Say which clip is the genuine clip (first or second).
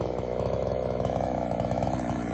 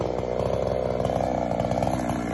second